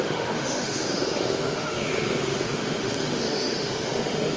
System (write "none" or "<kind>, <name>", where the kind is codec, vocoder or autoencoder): autoencoder, DAC-VAE